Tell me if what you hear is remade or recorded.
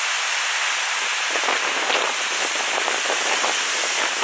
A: recorded